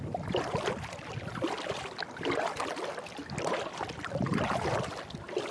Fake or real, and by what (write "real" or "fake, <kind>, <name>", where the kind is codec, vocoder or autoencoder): real